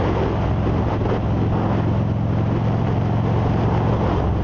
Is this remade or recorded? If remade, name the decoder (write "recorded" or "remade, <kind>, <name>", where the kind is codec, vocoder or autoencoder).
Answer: recorded